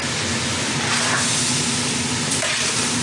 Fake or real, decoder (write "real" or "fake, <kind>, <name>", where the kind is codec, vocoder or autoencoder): real